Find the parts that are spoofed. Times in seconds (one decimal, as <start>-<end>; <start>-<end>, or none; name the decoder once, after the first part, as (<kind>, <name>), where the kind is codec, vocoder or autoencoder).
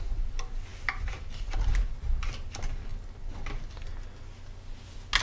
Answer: none